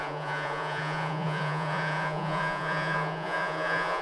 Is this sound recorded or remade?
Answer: remade